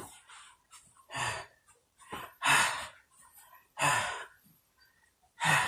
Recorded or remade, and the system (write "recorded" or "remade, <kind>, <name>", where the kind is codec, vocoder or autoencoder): remade, vocoder, BigVGAN v2